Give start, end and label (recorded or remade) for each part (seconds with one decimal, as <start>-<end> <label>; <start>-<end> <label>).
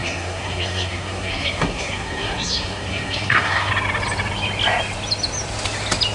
0.0-3.7 remade; 3.7-6.1 recorded